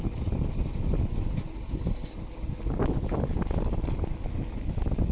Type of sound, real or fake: real